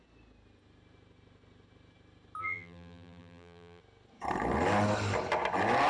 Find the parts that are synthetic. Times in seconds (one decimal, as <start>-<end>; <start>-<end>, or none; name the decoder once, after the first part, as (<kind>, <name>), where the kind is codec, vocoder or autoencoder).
2.4-3.8 (vocoder, BigVGAN v2)

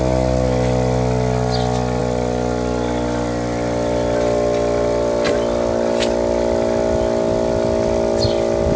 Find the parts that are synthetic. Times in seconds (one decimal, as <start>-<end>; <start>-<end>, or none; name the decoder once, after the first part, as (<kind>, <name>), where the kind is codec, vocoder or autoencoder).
none

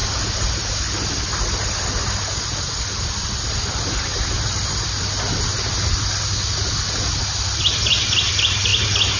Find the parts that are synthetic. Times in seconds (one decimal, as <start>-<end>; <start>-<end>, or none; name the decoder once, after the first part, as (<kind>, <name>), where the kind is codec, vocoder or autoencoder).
2.4-5.5 (vocoder, BigVGAN v2); 7.0-9.2